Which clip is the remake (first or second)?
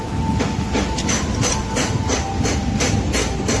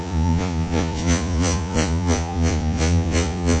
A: second